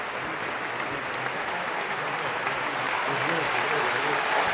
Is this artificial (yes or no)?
no